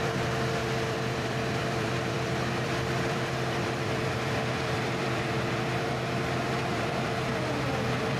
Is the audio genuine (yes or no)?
no